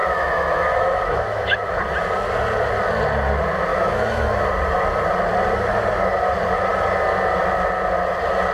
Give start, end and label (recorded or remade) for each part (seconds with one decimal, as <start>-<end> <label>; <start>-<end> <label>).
0.0-1.8 remade; 1.8-3.7 recorded; 3.7-4.5 remade; 4.5-8.5 recorded